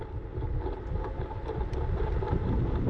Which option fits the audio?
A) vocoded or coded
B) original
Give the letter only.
B